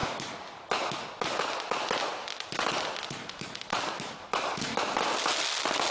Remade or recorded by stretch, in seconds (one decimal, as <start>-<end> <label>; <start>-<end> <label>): 0.0-5.9 recorded